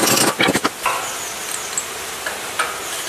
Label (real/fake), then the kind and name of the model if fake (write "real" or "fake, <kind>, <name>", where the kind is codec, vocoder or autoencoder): real